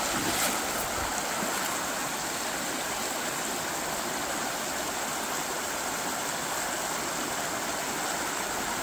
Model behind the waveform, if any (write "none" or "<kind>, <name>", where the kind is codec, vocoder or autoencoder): none